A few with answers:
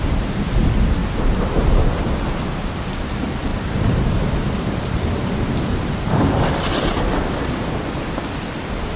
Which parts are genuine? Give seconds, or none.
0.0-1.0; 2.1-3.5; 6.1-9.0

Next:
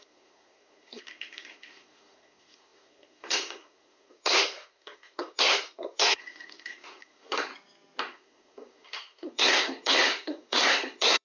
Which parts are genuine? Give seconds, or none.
7.5-8.0